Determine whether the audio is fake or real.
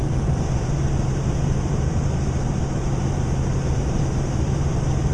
fake